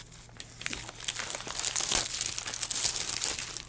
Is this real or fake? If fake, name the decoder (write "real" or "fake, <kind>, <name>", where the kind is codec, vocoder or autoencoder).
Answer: real